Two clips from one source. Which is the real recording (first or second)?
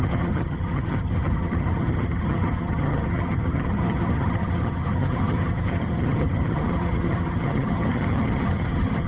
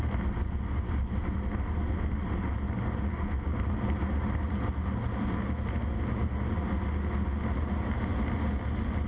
second